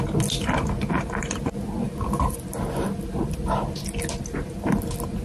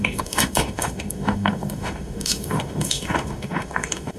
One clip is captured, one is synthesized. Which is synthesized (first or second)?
second